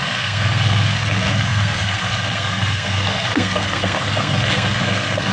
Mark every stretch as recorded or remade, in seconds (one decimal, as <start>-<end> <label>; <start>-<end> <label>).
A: 0.0-5.3 remade